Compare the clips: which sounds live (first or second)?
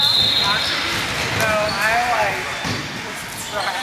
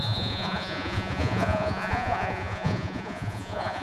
first